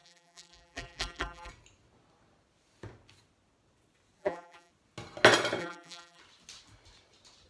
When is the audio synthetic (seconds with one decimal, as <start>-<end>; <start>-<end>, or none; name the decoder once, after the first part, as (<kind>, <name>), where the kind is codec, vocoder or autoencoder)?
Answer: 0.0-1.5 (vocoder, BigVGAN v2); 4.2-4.7; 5.6-6.2